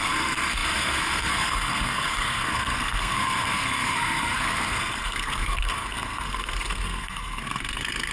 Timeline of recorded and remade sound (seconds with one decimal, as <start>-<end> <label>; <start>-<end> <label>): 0.0-8.1 remade